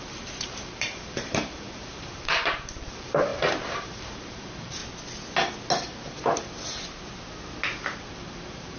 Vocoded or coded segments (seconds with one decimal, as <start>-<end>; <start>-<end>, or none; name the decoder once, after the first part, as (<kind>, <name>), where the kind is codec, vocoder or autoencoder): 0.0-4.8 (vocoder, BigVGAN v2); 8.0-8.8